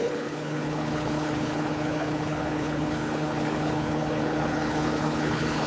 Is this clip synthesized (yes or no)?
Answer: yes